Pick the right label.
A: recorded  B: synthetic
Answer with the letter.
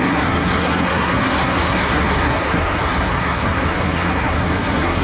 B